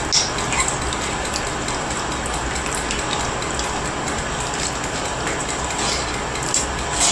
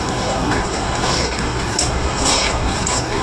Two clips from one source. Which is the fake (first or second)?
second